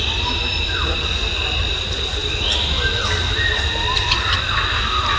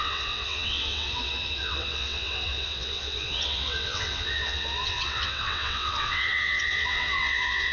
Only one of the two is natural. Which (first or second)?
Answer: first